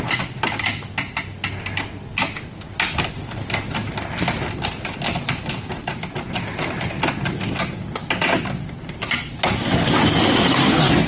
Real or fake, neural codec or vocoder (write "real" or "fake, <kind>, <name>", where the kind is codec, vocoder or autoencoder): real